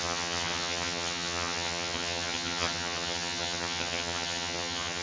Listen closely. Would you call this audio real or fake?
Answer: fake